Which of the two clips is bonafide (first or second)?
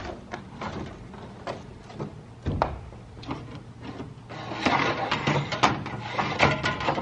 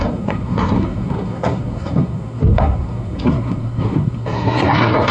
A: first